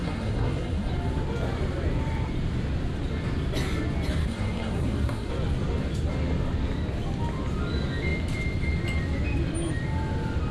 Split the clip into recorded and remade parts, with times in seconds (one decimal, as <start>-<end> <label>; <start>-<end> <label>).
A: 0.0-0.9 remade; 0.9-4.2 recorded; 4.2-5.3 remade; 5.3-10.5 recorded